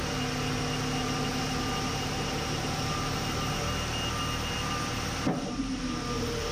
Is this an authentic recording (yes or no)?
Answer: yes